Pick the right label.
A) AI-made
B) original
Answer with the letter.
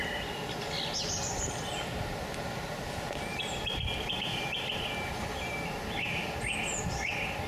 B